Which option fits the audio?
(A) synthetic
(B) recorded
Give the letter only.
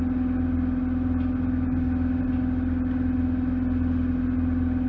B